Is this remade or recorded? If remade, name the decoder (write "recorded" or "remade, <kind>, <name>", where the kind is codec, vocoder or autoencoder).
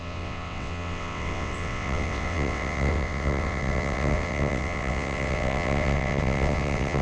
remade, vocoder, WaveNeXt